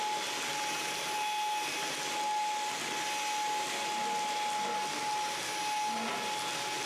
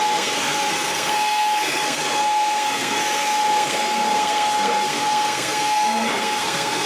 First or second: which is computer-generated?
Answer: second